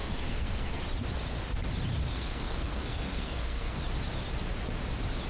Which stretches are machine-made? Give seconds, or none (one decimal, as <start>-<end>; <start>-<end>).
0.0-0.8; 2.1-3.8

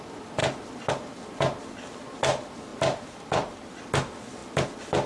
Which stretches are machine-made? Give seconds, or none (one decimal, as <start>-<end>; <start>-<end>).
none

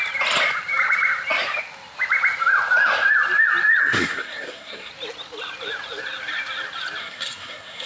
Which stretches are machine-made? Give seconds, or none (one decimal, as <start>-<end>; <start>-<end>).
3.8-4.9; 7.0-7.9

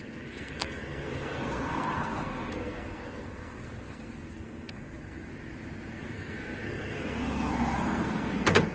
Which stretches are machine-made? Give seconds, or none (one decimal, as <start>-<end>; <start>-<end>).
0.0-5.3; 5.9-8.7

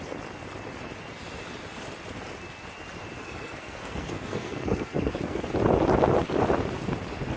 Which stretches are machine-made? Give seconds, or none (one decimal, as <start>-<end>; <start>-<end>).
3.2-5.4

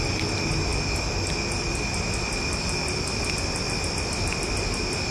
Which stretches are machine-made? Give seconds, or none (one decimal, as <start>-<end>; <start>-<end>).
none

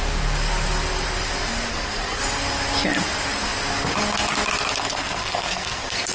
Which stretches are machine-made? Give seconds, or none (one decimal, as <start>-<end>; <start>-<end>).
1.7-2.2; 4.8-6.1

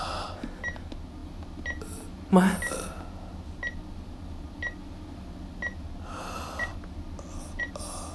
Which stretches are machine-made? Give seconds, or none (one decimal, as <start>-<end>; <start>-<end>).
none